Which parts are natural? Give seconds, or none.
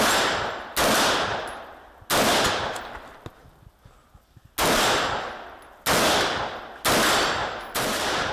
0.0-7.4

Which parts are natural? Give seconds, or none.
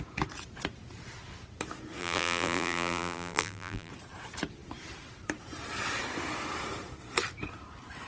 0.0-2.0; 3.9-8.1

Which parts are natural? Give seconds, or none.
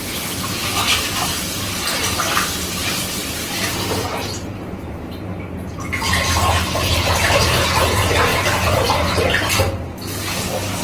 0.0-3.2; 5.8-10.8